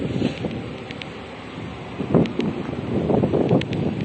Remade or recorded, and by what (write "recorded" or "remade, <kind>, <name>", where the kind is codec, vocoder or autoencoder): recorded